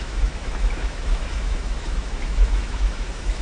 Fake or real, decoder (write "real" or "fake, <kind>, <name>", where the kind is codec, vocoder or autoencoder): fake, autoencoder, DAC-VAE